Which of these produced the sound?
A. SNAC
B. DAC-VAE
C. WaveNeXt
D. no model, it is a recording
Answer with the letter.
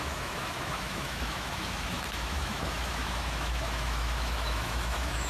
B